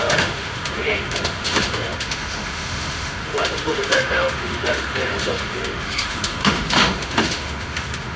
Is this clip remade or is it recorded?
remade